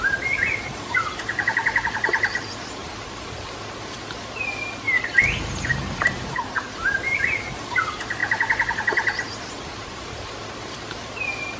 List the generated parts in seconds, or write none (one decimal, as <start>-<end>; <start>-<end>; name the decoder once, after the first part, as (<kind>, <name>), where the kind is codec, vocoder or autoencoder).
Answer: 0.0-2.8 (vocoder, BigVGAN v2); 4.8-8.2; 9.3-11.6